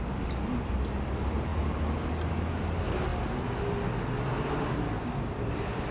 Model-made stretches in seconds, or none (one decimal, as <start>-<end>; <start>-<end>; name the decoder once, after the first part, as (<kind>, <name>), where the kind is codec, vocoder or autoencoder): none